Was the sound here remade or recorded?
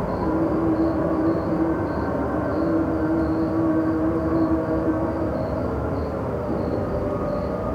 recorded